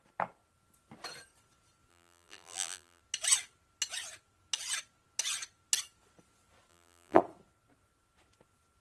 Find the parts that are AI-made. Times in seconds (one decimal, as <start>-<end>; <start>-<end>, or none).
1.9-3.0; 6.7-7.2